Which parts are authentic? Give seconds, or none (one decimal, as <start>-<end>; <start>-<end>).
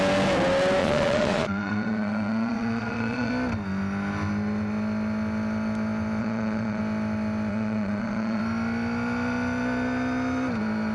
0.0-0.8; 3.3-6.2; 6.8-7.5; 8.4-10.9